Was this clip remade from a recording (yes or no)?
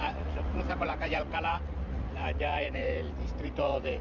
yes